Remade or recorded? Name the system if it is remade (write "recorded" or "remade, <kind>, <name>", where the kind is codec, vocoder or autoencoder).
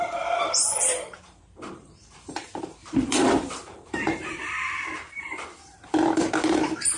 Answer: remade, vocoder, BigVGAN v2